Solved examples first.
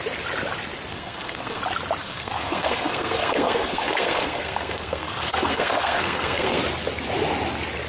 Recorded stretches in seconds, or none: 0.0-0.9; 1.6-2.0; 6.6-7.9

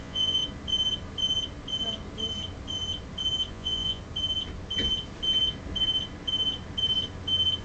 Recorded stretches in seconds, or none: 0.4-3.5; 4.0-7.6

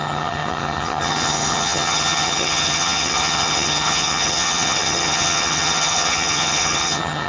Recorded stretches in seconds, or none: none

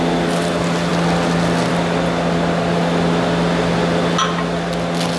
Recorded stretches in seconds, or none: 0.0-5.2

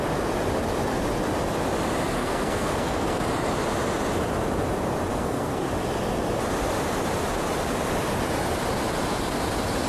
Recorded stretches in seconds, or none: 0.0-2.2; 3.2-5.1; 5.7-9.9

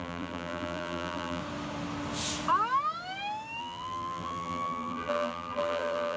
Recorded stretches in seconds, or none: 1.4-3.6

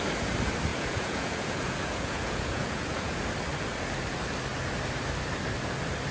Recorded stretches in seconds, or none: 0.0-0.7; 3.2-6.1